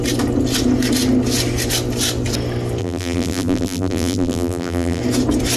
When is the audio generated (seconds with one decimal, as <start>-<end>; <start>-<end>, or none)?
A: 2.8-5.0

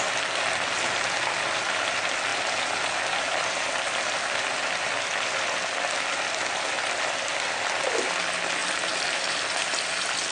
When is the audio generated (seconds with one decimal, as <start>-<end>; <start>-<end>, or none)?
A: 8.6-9.4

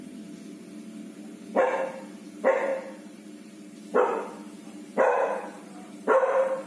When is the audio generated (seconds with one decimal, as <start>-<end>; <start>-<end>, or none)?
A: 2.7-3.7; 4.6-6.7

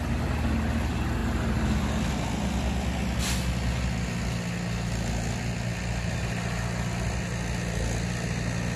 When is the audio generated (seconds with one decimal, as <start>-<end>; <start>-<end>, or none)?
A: none

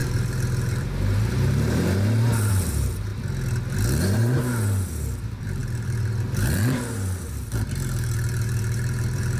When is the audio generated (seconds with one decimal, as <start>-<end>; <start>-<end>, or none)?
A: 0.0-3.1; 4.0-9.4

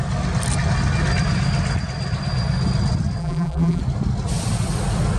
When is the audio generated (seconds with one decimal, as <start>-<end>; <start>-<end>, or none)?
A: 3.2-3.8

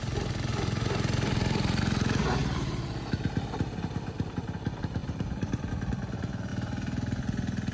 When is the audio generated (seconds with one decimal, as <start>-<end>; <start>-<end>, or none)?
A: 0.5-1.8; 2.4-4.4; 5.0-5.7; 6.5-7.2